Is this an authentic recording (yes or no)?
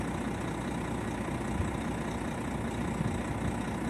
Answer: yes